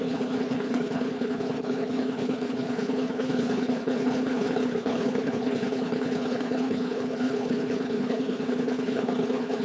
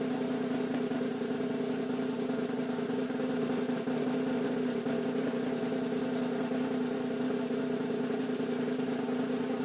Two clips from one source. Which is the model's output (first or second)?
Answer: first